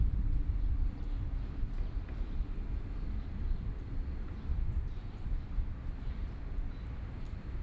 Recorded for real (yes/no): yes